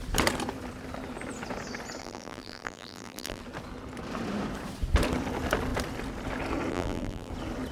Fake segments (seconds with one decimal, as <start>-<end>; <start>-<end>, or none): 2.0-3.4; 6.7-7.3